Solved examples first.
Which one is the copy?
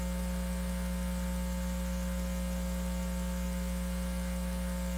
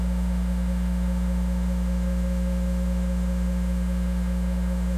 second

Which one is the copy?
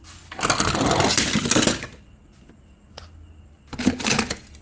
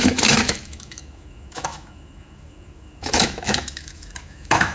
second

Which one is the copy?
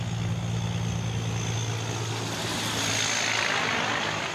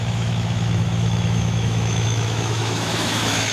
second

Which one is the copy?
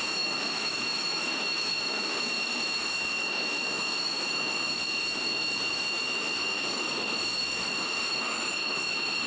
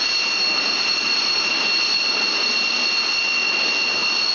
first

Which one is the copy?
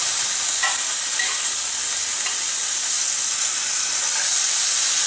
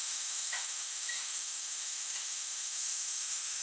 second